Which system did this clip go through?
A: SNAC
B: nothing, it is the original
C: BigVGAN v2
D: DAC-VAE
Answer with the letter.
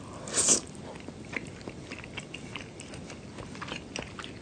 B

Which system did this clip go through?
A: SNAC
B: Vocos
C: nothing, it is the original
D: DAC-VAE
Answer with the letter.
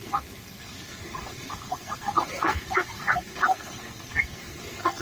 A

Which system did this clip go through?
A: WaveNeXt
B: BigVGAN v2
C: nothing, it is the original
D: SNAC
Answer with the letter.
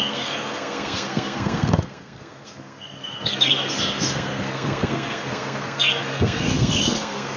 D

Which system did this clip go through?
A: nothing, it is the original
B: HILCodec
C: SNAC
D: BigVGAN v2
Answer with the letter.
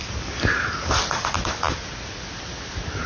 A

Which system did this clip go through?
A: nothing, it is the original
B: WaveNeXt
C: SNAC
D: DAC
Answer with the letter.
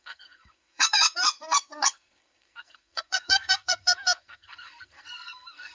C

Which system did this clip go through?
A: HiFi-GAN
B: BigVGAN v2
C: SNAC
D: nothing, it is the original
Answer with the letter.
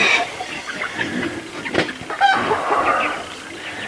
D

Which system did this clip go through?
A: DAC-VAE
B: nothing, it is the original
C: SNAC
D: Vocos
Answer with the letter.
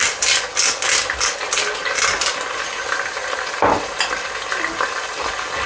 B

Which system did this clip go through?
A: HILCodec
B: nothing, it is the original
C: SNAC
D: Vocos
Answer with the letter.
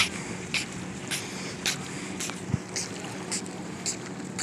B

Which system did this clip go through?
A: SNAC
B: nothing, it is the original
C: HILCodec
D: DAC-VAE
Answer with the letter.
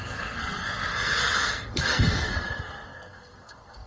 A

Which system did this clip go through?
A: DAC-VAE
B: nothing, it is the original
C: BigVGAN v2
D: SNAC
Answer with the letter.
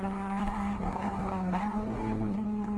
D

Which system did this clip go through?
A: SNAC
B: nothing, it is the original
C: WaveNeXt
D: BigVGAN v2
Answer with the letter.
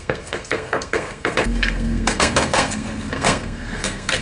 A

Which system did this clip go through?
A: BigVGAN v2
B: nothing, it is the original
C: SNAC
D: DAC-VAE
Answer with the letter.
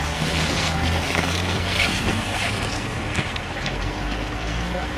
C